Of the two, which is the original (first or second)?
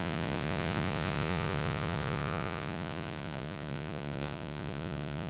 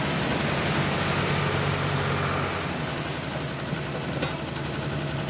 second